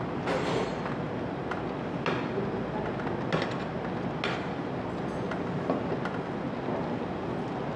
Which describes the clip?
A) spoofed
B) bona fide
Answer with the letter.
B